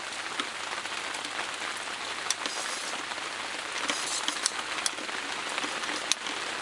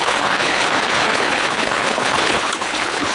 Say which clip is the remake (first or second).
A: second